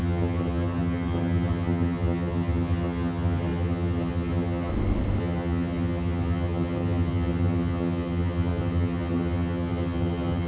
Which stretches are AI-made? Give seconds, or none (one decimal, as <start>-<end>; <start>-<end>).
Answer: 0.0-4.7; 5.2-10.5

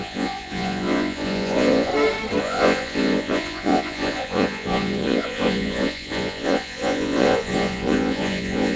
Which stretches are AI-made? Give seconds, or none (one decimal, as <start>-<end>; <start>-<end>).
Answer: 0.0-1.9; 2.4-8.8

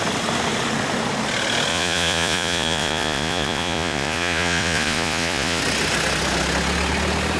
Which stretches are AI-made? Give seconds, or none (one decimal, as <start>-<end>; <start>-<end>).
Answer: 1.7-5.6

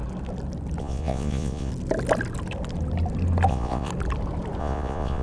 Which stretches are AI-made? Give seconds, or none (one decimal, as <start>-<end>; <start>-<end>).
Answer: 0.8-1.7; 3.5-3.9; 4.6-5.2

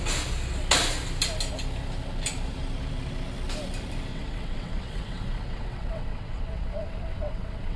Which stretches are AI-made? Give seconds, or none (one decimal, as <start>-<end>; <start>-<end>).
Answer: 4.1-7.8

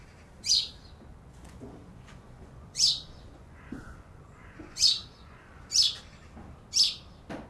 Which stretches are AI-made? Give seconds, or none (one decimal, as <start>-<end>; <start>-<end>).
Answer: 1.1-5.6

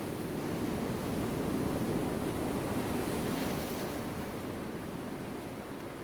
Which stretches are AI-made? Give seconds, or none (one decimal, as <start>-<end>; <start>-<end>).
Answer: none